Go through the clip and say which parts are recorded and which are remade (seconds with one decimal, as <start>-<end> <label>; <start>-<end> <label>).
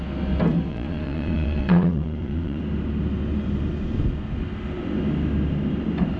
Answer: 0.0-0.7 recorded; 0.7-2.6 remade; 2.6-6.2 recorded